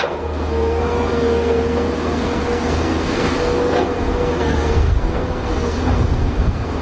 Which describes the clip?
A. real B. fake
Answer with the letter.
B